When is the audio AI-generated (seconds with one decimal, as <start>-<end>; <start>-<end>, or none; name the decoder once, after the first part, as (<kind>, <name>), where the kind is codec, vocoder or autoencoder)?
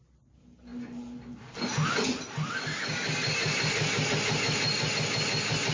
none